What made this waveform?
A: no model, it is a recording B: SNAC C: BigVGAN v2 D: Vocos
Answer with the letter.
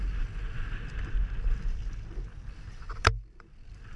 C